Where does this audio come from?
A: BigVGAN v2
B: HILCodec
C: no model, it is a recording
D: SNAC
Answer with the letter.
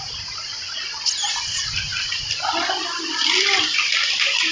C